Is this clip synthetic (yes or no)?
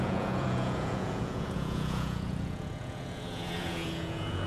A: yes